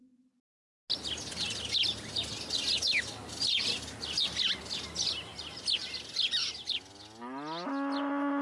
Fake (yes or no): no